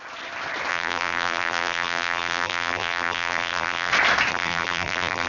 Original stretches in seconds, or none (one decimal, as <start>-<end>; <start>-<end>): 0.0-0.7; 3.9-4.3